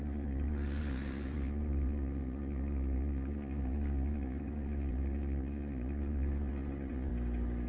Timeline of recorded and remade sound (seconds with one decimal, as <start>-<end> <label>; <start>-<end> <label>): 0.0-7.1 remade; 7.1-7.7 recorded